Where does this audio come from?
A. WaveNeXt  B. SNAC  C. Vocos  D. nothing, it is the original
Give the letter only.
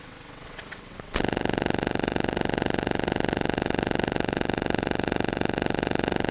A